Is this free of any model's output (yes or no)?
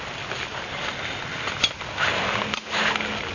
yes